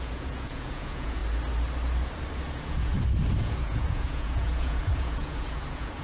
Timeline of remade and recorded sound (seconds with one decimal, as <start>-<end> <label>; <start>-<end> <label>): 0.0-1.2 remade; 1.2-2.5 recorded; 2.5-2.9 remade; 2.9-3.4 recorded; 3.4-6.0 remade